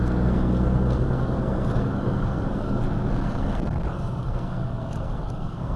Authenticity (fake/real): fake